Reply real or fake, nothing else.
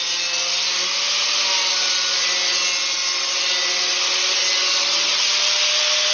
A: real